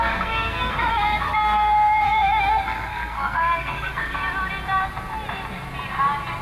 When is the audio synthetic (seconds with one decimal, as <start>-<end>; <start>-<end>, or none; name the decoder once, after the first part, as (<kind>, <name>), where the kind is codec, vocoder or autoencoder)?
0.0-4.2 (codec, SNAC)